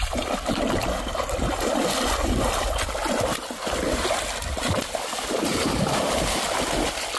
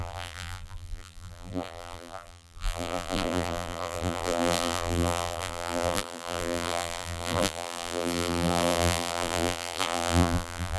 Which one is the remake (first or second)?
second